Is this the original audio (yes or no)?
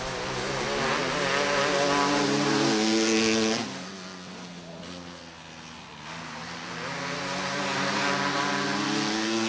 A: yes